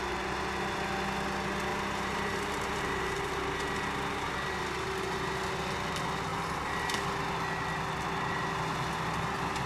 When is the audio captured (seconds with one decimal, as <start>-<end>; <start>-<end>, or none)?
0.0-1.7; 3.3-9.7